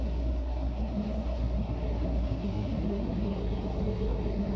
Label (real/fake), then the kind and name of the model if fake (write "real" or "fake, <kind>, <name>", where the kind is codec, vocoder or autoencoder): fake, codec, SNAC